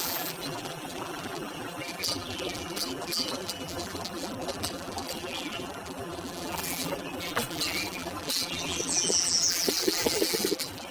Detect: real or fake fake